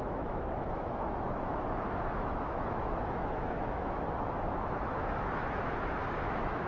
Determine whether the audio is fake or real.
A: fake